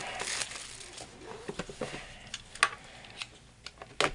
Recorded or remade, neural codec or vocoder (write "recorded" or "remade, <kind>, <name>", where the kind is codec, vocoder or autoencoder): recorded